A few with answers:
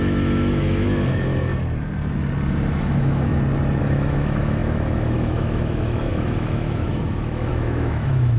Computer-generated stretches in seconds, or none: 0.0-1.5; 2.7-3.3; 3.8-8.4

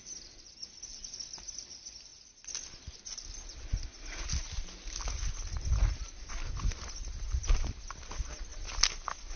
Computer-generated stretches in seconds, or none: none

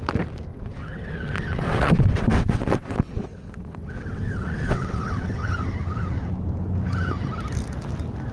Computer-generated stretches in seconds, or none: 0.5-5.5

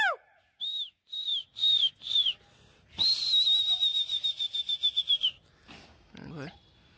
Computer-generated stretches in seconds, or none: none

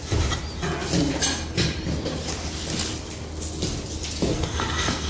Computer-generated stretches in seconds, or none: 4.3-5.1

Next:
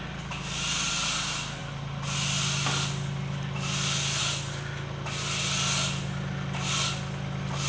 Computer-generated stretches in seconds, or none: none